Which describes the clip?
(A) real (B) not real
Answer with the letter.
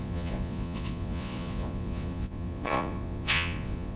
B